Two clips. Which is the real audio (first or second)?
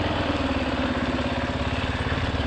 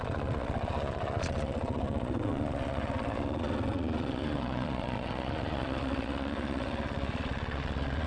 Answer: first